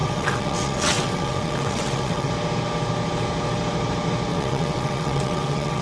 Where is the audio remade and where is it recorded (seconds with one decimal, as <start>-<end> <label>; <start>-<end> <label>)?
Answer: 0.0-2.3 remade; 2.3-4.3 recorded; 4.3-5.8 remade